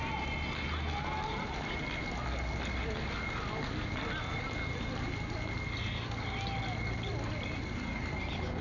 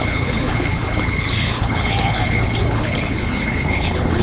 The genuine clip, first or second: first